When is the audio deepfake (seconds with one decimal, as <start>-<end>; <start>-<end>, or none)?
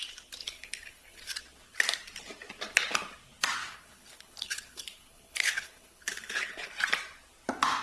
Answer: 0.4-1.3; 3.6-6.7